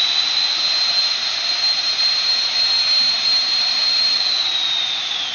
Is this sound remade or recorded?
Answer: recorded